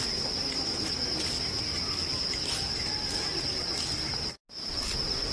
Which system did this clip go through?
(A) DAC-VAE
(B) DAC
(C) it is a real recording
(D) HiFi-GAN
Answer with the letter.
C